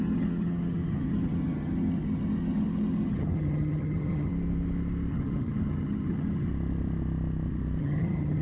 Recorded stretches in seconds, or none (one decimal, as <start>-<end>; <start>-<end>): 4.3-5.1; 6.5-7.8